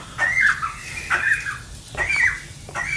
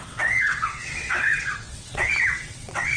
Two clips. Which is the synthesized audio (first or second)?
second